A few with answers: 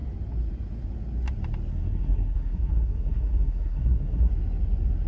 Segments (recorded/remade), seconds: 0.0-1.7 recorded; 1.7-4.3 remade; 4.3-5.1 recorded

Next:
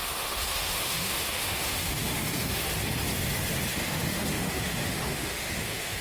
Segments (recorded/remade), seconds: 0.0-2.7 remade; 2.7-3.7 recorded; 3.7-6.0 remade

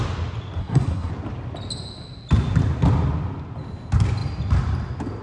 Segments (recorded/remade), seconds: 0.0-0.6 recorded; 0.6-1.1 remade; 1.1-5.2 recorded

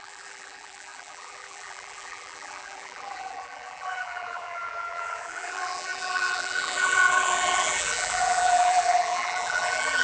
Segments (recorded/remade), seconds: 0.0-10.0 remade